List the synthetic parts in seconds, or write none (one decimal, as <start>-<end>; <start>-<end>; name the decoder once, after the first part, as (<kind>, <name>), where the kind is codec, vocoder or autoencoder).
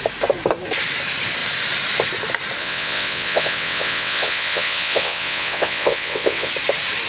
2.6-6.5 (vocoder, WaveNeXt)